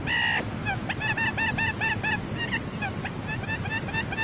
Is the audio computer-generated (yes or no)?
no